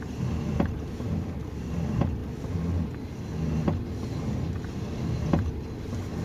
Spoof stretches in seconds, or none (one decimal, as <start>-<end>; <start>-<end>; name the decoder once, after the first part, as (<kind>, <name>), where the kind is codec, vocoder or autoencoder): 0.0-2.2 (vocoder, BigVGAN v2); 4.8-6.2